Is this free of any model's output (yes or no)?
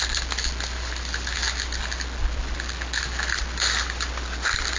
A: yes